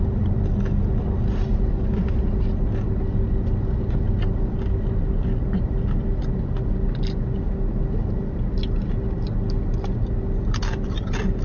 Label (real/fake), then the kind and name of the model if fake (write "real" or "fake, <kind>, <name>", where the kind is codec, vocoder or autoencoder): real